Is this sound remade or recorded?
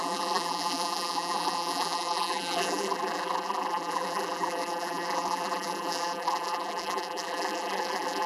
remade